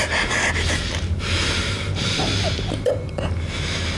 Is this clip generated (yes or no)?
no